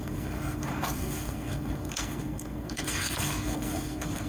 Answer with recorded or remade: remade